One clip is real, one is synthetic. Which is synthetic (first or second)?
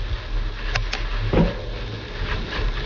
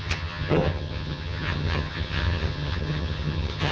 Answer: second